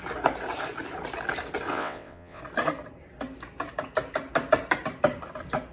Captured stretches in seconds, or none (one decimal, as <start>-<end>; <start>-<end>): 0.0-1.7; 2.4-5.7